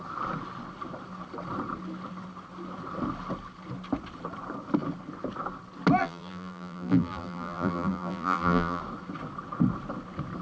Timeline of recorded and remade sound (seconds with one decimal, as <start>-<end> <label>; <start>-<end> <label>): 0.0-6.0 recorded; 6.0-8.8 remade; 8.8-10.4 recorded